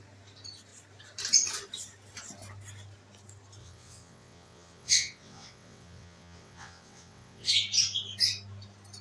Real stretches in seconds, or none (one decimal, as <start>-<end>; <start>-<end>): 0.0-3.6; 7.5-9.0